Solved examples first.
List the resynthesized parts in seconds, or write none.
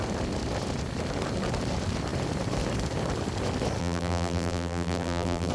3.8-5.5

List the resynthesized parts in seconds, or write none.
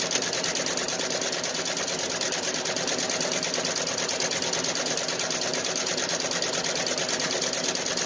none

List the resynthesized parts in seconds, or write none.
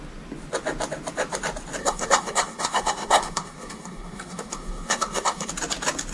1.8-5.5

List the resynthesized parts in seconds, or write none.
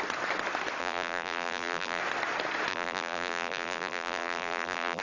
0.8-2.0; 2.7-5.0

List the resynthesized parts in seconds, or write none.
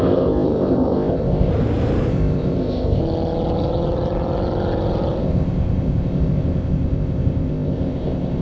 0.0-1.5; 2.1-3.0; 5.2-8.4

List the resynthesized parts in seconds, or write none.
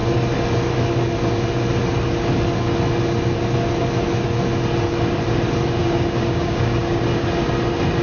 5.8-7.0